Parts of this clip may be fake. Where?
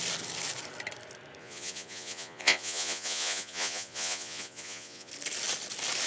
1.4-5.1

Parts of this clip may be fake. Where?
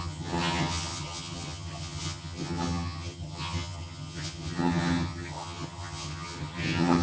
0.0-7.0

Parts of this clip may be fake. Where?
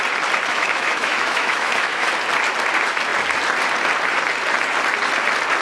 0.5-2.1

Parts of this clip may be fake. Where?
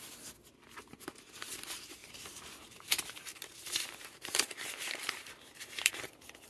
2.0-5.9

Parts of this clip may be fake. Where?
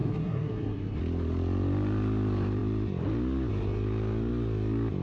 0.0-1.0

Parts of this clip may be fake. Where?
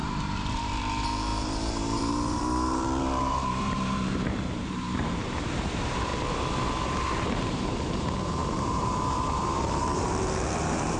0.0-6.1; 7.4-11.0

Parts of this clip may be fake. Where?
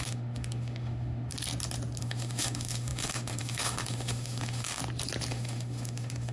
0.0-1.3; 2.0-4.8; 5.3-6.3